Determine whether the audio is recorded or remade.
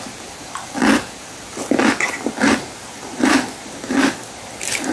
recorded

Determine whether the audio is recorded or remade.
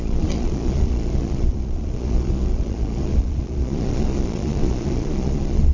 remade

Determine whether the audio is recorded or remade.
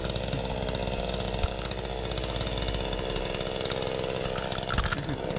recorded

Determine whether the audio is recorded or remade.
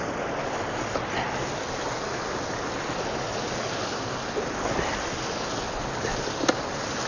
recorded